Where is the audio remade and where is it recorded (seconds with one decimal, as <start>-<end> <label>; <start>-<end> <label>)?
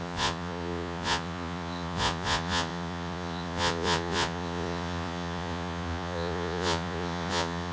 0.0-7.7 remade